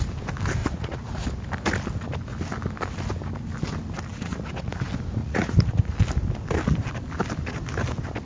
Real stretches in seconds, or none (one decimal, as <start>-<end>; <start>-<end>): 0.0-0.6; 1.2-4.1; 4.7-5.2; 5.9-8.2